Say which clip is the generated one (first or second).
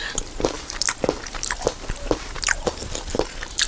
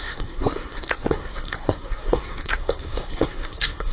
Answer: second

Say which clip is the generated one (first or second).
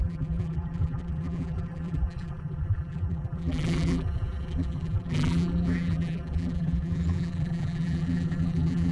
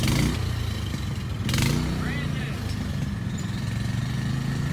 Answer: first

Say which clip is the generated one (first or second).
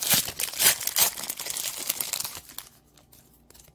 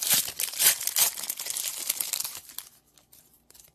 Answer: second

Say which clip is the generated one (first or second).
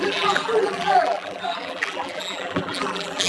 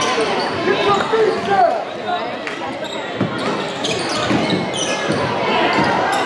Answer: first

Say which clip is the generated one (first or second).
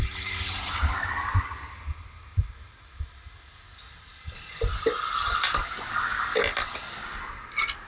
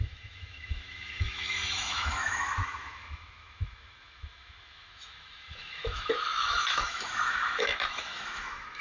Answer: second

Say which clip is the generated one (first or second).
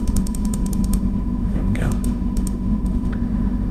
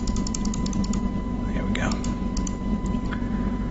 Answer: first